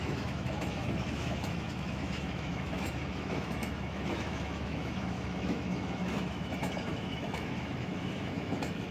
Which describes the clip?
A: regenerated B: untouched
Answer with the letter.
A